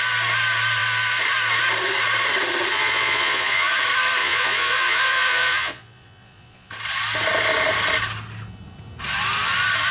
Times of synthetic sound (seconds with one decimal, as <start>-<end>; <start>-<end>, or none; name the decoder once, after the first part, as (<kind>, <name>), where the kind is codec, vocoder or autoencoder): 2.7-3.7 (vocoder, Vocos); 4.2-6.7